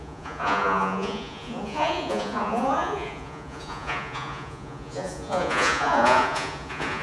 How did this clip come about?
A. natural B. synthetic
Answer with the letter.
B